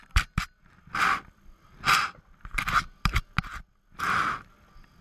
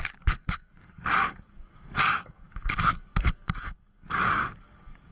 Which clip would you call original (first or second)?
first